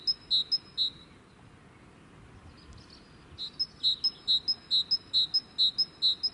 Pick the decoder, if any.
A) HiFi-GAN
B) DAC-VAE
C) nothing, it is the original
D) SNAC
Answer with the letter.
C